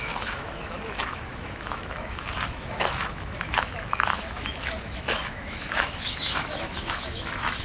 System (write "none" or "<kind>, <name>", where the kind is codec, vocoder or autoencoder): autoencoder, DAC-VAE